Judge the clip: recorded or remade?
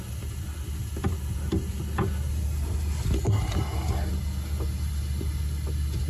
recorded